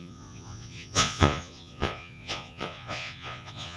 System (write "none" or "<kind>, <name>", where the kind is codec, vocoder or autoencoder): vocoder, Vocos